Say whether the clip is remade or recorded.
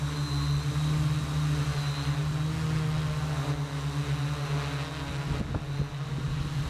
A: recorded